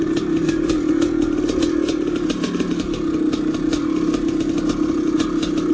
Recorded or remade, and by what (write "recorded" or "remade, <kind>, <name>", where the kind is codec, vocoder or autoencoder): recorded